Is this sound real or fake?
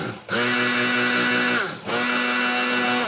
real